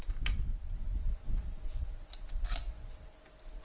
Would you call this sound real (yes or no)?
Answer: yes